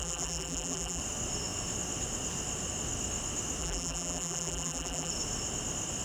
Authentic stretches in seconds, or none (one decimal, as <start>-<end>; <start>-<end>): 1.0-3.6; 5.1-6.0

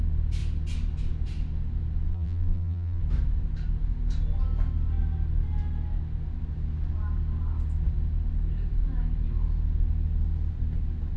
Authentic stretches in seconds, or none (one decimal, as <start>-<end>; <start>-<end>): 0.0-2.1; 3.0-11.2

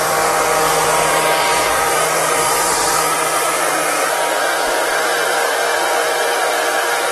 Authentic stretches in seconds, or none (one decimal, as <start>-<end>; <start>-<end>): 0.0-1.5; 5.8-7.1

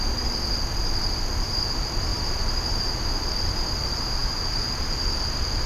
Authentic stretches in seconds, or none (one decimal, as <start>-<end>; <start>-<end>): 0.0-5.7

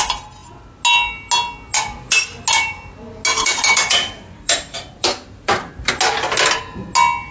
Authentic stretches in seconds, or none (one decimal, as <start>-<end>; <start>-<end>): 0.0-3.3; 5.9-7.3

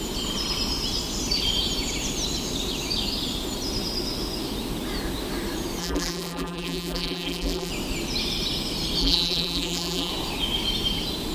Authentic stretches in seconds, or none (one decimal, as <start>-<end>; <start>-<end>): 0.0-5.8; 7.7-9.0; 10.1-11.3

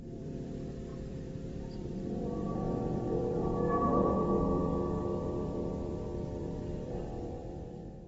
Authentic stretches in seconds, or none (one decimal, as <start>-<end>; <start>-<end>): none